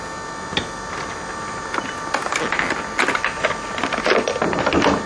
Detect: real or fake real